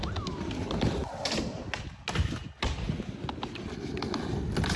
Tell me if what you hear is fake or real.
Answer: real